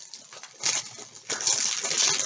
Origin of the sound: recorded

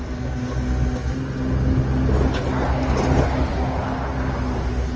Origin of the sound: recorded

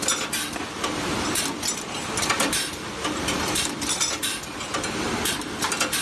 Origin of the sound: recorded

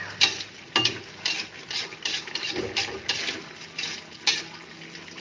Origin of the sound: recorded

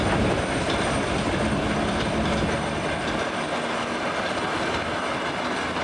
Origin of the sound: recorded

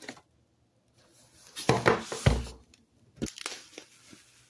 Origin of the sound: recorded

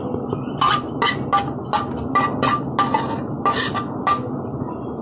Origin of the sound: recorded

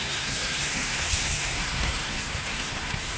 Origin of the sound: remade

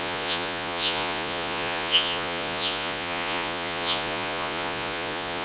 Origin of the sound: remade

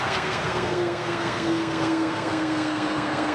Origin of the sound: remade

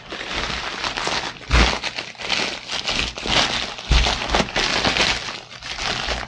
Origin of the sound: recorded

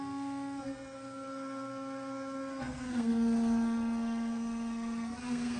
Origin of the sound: remade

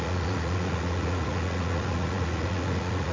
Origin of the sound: remade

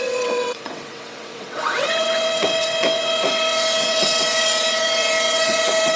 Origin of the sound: remade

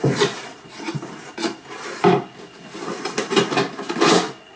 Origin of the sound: recorded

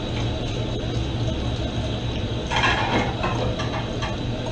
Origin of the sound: recorded